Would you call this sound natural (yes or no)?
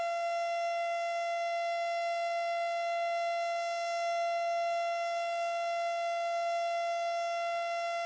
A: yes